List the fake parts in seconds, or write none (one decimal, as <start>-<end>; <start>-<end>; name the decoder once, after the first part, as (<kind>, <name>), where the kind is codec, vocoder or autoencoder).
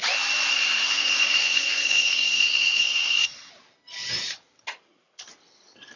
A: 0.5-3.5 (codec, SNAC)